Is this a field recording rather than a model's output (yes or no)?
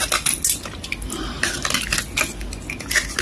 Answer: yes